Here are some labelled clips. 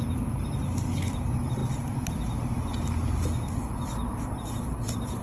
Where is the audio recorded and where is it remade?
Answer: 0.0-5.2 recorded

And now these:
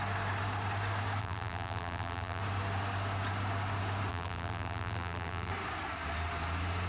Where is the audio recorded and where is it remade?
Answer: 0.0-1.2 recorded; 1.2-2.4 remade; 2.4-4.1 recorded; 4.1-5.5 remade; 5.5-6.9 recorded